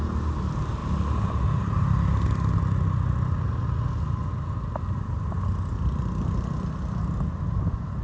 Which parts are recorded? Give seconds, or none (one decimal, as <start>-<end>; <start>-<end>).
0.0-8.0

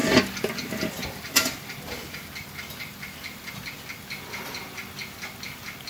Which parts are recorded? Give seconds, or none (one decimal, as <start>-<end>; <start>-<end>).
3.5-5.9

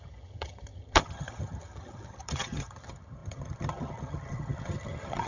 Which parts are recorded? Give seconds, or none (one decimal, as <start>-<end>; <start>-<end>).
none

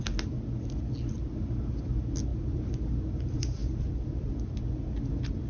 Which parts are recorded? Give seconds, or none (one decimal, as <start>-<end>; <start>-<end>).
0.0-2.3; 2.9-3.6; 4.6-5.5

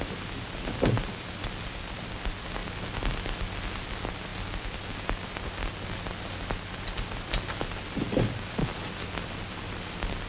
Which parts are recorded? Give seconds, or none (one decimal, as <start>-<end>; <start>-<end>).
0.0-10.3